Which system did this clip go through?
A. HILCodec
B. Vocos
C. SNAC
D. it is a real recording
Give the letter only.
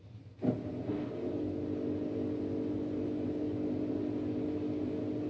D